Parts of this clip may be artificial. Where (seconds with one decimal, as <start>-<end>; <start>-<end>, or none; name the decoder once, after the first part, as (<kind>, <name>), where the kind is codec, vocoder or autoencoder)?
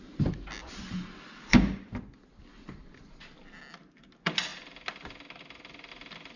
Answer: none